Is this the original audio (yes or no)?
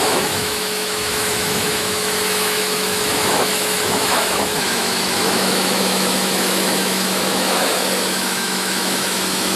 no